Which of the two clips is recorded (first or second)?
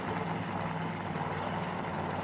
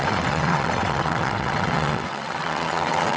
first